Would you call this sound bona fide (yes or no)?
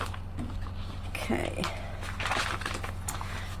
yes